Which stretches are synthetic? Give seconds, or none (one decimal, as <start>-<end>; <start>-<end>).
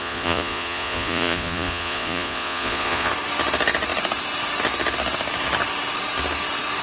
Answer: 0.0-3.1